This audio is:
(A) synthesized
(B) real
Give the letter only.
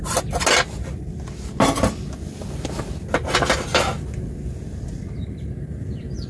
B